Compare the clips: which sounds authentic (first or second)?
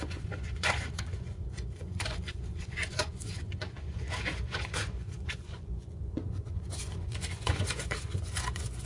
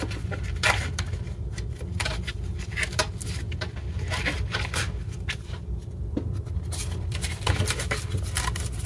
second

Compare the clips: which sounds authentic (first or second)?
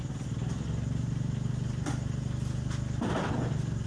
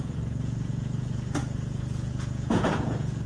first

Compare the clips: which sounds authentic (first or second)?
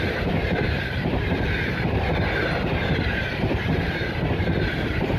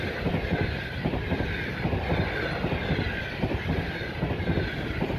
second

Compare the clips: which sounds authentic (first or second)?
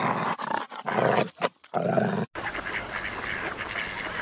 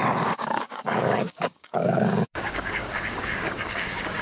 first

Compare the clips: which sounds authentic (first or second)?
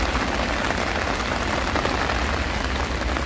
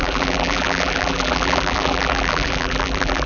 first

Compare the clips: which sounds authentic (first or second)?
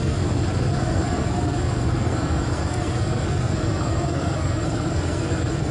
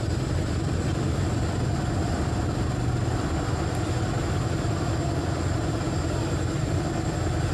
second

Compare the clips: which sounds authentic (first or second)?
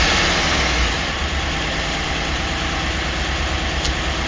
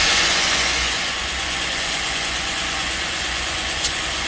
first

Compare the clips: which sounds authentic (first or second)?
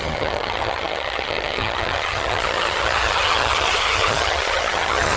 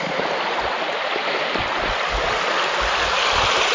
second